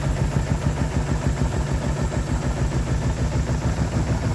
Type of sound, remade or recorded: recorded